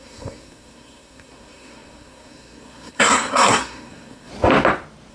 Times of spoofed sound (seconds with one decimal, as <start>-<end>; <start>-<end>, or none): 0.0-4.3